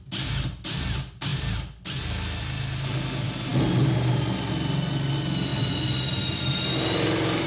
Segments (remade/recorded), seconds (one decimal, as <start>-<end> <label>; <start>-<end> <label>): 0.0-7.5 recorded